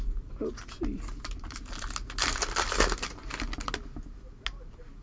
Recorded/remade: recorded